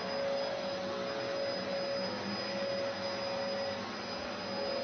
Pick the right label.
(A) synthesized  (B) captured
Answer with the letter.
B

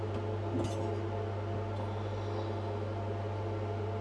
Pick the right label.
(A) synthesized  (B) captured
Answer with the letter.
B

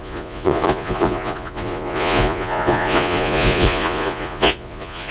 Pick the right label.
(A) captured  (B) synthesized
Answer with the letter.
B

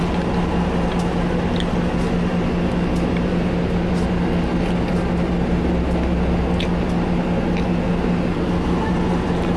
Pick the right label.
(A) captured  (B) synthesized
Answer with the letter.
A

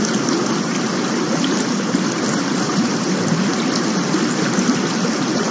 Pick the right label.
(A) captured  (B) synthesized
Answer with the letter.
A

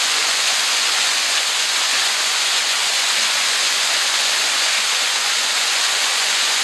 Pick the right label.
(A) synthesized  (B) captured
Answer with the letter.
A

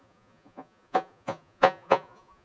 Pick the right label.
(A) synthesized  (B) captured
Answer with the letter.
A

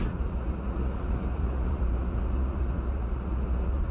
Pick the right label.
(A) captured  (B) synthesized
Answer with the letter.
B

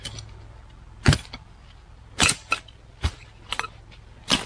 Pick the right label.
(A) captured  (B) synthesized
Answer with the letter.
A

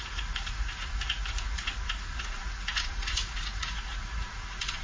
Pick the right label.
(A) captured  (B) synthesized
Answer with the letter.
B